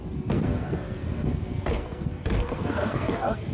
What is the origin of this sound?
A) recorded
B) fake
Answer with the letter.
B